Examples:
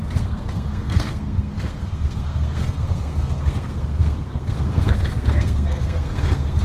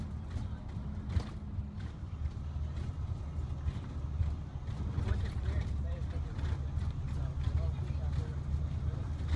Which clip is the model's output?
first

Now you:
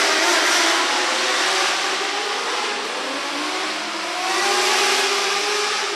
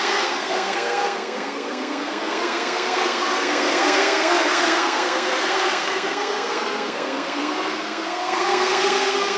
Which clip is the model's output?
second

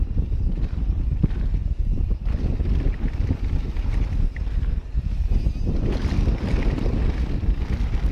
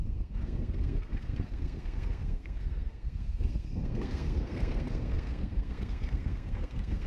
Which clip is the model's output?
second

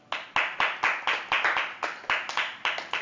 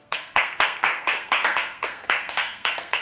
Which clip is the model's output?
second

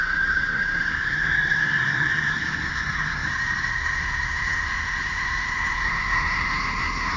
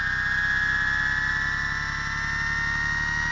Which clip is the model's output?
first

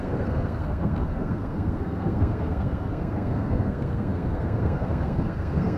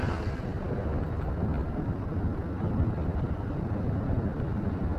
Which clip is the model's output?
first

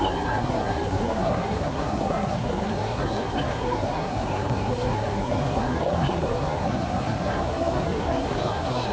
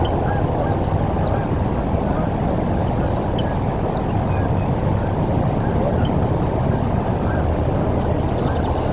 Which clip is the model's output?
first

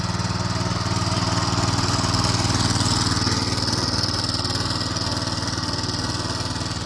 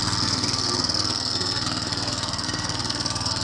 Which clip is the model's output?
second